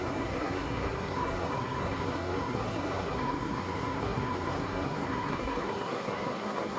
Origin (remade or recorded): remade